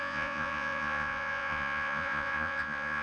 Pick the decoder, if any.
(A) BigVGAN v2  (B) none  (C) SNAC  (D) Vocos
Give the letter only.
D